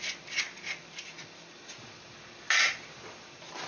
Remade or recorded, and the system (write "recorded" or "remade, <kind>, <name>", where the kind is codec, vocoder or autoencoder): recorded